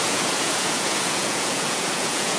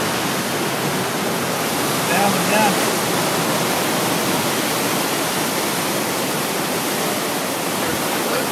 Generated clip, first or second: first